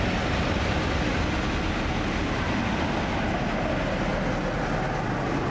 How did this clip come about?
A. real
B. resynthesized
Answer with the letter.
A